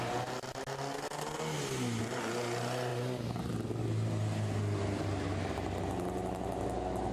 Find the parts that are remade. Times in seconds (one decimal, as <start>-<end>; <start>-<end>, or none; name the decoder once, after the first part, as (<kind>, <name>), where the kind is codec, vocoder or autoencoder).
none